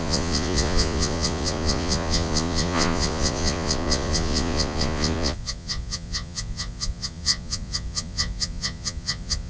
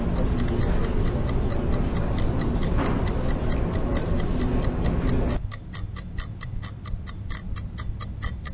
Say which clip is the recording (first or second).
second